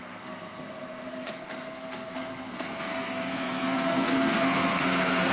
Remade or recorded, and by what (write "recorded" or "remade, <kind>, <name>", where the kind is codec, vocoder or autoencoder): remade, codec, SNAC